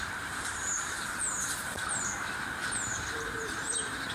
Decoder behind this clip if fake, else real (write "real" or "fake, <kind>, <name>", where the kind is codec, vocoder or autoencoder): fake, vocoder, BigVGAN v2